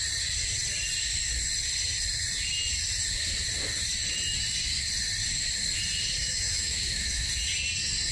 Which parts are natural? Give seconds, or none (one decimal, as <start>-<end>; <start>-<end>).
0.0-6.2; 7.3-8.1